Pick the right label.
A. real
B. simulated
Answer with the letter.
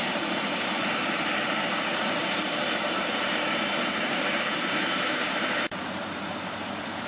B